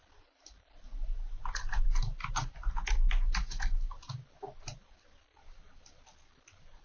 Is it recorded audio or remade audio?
recorded